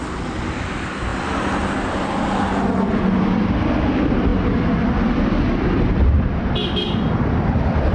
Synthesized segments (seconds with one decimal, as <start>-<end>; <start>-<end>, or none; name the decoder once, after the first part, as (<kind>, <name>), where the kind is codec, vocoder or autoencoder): none